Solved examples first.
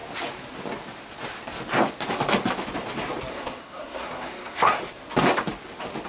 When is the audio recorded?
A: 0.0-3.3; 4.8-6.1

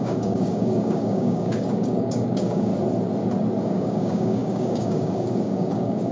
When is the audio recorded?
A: 2.7-3.6

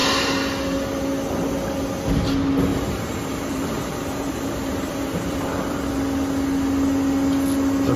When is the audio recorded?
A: 0.0-2.7; 5.9-8.0

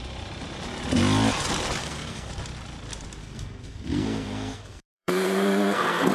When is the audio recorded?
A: 0.0-1.8; 2.3-3.2

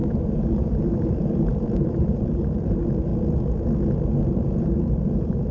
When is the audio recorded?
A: 3.1-4.4

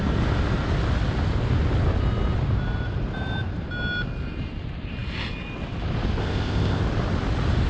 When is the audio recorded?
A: 0.0-6.2; 6.8-7.7

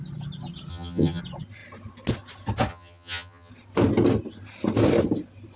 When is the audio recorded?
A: 0.0-0.7; 1.2-2.7; 3.5-5.6